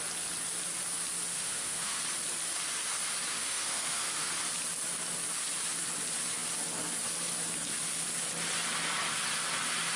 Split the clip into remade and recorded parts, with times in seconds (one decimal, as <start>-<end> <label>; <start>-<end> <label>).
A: 0.0-1.3 recorded; 1.3-2.0 remade; 2.0-3.3 recorded; 3.3-4.3 remade; 4.3-10.0 recorded